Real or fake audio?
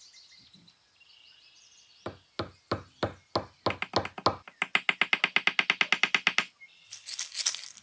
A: real